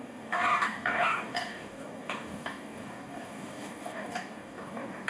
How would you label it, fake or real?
fake